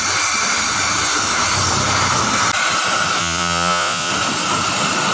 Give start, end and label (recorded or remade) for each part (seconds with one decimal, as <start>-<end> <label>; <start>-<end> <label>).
0.0-3.2 recorded; 3.2-4.1 remade; 4.1-5.1 recorded